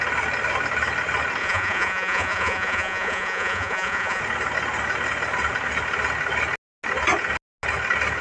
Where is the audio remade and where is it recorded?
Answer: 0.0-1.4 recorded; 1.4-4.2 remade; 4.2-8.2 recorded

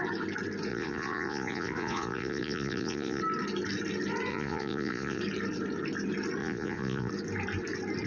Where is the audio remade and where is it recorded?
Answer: 0.0-0.7 recorded; 0.7-3.2 remade; 3.2-4.3 recorded; 4.3-5.2 remade; 5.2-6.4 recorded; 6.4-7.1 remade; 7.1-8.1 recorded

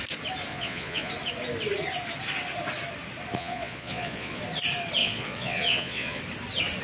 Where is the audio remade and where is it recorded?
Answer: 0.0-0.5 recorded; 0.5-1.1 remade; 1.1-3.3 recorded; 3.3-4.4 remade; 4.4-5.0 recorded; 5.0-6.2 remade; 6.2-6.8 recorded

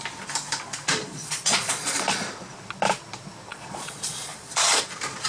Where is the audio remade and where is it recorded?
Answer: 0.0-1.1 recorded; 1.1-2.2 remade; 2.2-3.5 recorded; 3.5-4.8 remade; 4.8-5.3 recorded

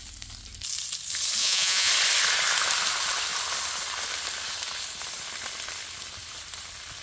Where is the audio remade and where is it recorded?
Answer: 0.0-1.4 recorded; 1.4-1.9 remade; 1.9-7.0 recorded